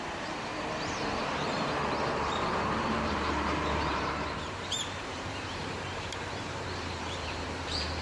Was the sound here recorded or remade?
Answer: remade